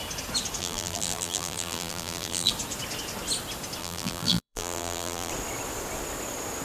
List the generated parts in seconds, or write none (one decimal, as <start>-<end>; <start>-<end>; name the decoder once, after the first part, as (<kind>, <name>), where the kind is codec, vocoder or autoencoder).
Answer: 0.6-2.5 (vocoder, BigVGAN v2); 3.8-5.3